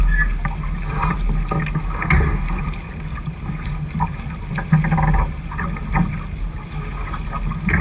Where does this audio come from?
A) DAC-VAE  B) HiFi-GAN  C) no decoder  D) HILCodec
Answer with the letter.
C